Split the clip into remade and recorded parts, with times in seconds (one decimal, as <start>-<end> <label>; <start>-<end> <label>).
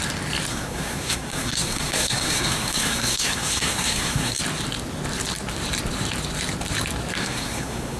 0.0-0.5 recorded; 0.5-4.4 remade; 4.4-7.2 recorded; 7.2-8.0 remade